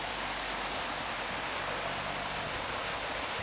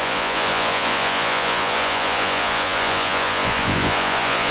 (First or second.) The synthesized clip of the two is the second